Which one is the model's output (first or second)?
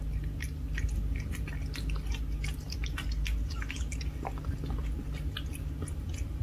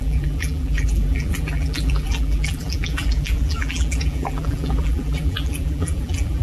second